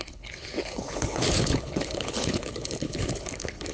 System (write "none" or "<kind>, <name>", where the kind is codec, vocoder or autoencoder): codec, HILCodec